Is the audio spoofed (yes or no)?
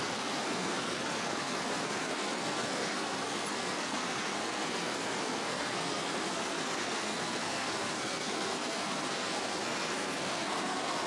yes